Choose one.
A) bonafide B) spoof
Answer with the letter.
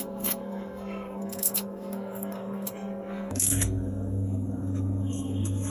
B